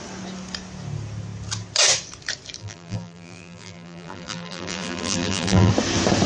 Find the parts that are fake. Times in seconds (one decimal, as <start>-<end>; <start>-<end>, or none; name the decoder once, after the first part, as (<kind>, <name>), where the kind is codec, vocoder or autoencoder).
2.6-5.7 (vocoder, BigVGAN v2)